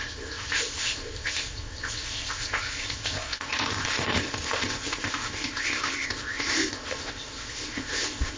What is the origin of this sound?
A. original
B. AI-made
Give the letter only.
B